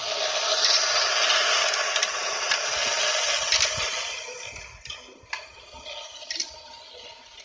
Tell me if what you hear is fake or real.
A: real